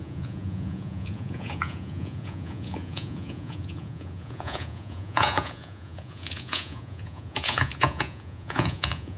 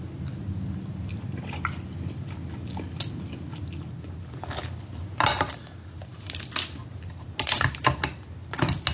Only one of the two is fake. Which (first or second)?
first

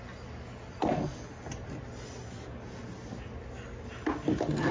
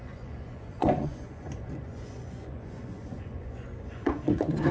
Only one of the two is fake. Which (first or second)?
second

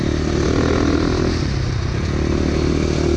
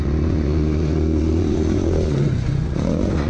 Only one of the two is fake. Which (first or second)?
second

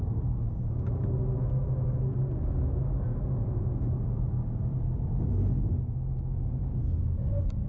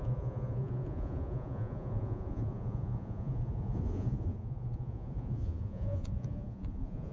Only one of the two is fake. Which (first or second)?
second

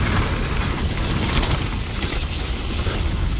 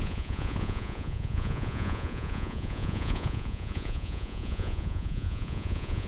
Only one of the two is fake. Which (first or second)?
second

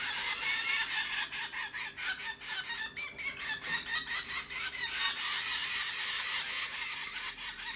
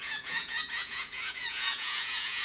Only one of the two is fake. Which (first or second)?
second